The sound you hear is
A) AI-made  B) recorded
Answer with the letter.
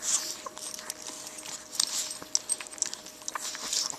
B